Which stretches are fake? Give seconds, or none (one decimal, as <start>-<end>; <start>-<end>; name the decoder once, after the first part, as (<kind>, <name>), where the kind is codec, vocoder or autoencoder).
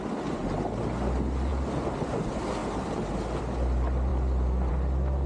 none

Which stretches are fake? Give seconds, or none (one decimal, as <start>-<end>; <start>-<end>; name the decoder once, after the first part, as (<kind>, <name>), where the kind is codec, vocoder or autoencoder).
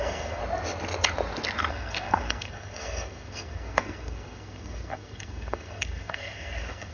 0.0-0.4 (codec, SNAC); 1.7-6.9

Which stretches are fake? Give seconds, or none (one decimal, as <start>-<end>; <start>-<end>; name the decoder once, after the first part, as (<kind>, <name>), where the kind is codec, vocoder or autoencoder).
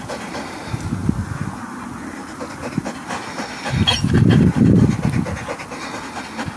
none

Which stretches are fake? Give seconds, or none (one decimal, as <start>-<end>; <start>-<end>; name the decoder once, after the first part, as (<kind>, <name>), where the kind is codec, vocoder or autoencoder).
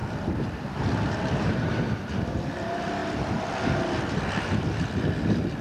none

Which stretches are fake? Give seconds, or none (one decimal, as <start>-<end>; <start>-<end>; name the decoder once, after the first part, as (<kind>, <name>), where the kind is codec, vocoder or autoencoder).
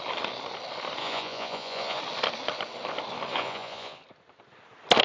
1.0-2.0 (vocoder, Vocos); 3.3-4.0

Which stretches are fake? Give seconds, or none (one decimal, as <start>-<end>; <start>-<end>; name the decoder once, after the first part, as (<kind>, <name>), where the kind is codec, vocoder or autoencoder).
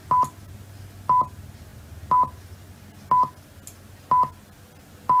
none